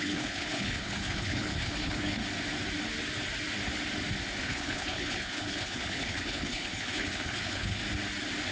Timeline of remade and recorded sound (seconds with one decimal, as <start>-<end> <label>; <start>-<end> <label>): 0.0-2.2 remade; 2.2-4.4 recorded; 4.4-7.8 remade; 7.8-8.5 recorded